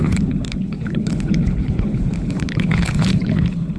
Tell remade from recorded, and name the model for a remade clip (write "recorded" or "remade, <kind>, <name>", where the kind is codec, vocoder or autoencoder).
remade, codec, HILCodec